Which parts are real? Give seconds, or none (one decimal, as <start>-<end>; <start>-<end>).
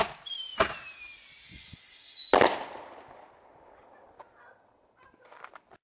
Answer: 0.0-5.8